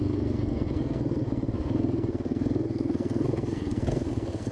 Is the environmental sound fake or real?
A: fake